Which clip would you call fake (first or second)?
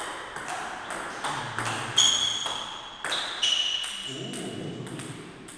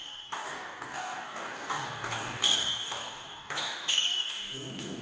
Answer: second